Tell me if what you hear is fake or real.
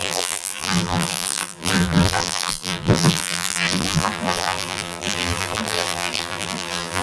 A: fake